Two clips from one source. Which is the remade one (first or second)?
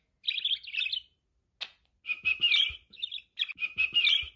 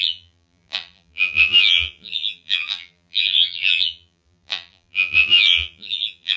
second